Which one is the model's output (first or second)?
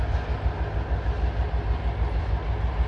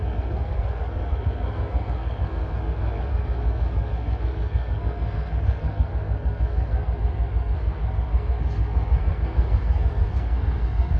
second